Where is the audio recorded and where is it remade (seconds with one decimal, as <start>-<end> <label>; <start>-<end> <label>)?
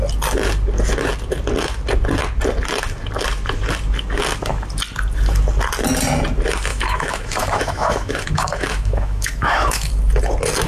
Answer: 0.0-6.7 recorded; 6.7-9.9 remade; 9.9-10.7 recorded